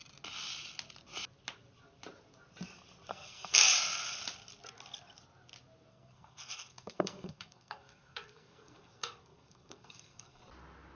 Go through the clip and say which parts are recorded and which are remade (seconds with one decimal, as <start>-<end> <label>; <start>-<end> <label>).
0.0-3.1 recorded; 3.1-3.7 remade; 3.7-5.9 recorded; 5.9-10.4 remade; 10.4-11.0 recorded